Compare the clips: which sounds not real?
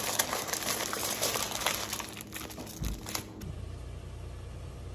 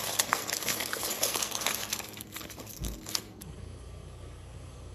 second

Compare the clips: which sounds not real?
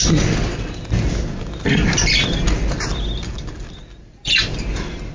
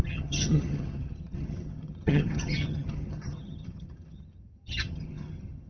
second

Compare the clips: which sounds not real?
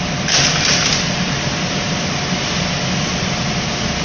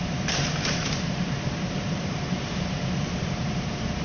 second